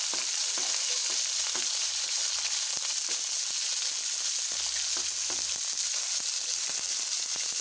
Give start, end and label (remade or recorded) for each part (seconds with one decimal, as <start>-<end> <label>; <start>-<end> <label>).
0.0-7.6 recorded